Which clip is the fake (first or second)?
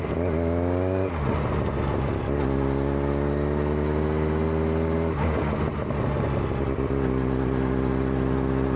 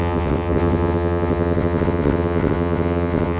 second